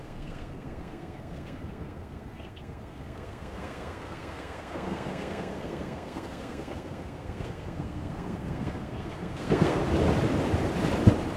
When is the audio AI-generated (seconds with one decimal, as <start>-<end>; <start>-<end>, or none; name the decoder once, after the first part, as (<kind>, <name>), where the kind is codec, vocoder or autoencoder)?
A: 0.0-9.8 (codec, SNAC)